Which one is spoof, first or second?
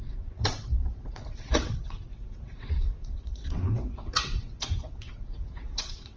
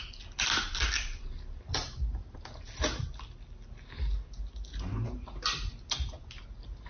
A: first